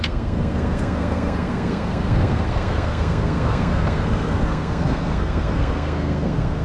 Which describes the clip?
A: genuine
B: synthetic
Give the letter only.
B